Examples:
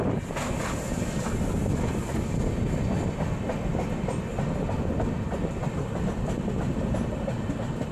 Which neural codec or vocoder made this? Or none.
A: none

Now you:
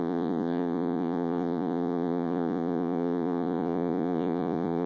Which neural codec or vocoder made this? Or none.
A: vocoder, Vocos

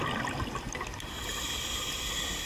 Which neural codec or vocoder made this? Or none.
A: none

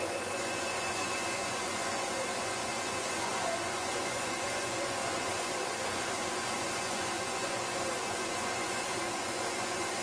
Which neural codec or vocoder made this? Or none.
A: vocoder, Vocos